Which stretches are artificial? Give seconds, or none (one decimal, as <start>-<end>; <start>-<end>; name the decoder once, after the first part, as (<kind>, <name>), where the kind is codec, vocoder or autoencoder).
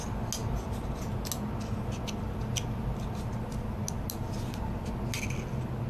none